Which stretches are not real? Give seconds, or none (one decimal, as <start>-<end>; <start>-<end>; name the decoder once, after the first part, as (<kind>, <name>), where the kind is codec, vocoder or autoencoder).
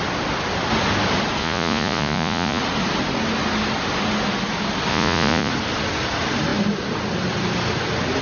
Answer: 1.4-2.6 (vocoder, Vocos); 4.9-5.5